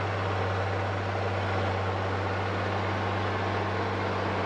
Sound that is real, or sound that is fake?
real